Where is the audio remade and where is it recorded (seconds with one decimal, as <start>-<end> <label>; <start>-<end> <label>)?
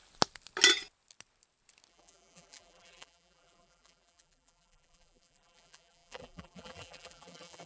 0.0-1.9 recorded; 1.9-7.7 remade